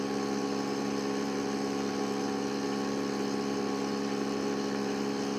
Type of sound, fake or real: real